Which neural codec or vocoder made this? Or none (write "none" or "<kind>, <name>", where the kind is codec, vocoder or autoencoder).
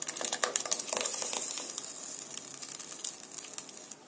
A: none